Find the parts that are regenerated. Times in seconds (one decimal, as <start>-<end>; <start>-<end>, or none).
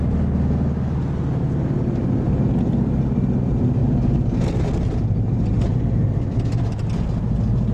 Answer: none